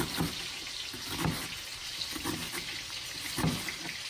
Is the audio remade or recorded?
recorded